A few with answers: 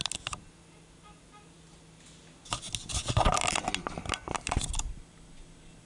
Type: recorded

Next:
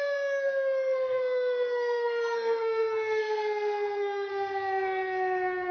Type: remade